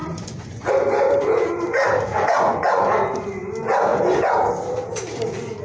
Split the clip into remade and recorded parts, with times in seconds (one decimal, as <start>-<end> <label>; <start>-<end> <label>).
0.0-0.7 remade; 0.7-2.1 recorded; 2.1-2.8 remade; 2.8-5.6 recorded